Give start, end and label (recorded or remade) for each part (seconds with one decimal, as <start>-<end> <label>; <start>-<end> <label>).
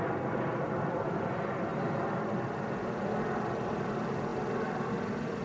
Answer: 0.0-5.4 recorded